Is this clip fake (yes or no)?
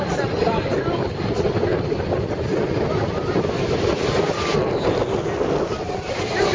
no